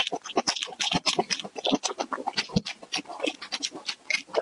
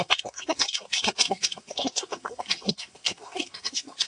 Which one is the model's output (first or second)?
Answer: second